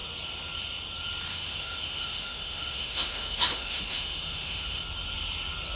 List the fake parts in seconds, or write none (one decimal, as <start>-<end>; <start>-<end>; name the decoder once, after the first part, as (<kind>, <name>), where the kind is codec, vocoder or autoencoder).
1.3-4.8 (autoencoder, DAC-VAE)